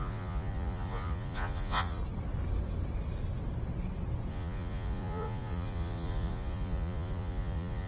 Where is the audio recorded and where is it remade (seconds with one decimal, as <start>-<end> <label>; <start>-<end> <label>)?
0.0-2.0 remade; 2.0-4.3 recorded; 4.3-7.9 remade